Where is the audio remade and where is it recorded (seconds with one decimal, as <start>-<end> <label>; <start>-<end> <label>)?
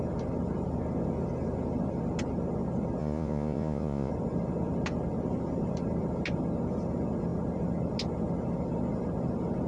0.0-3.0 recorded; 3.0-4.1 remade; 4.1-9.7 recorded